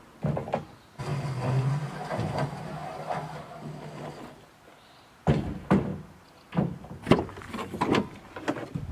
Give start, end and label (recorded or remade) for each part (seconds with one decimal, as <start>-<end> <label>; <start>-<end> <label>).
0.0-8.9 recorded